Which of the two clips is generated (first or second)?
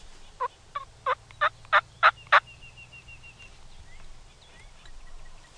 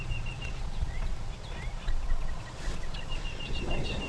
second